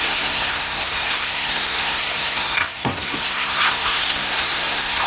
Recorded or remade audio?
remade